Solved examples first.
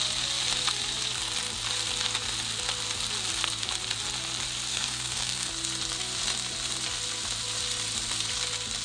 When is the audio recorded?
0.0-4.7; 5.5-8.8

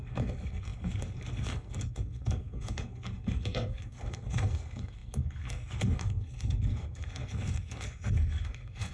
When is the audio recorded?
none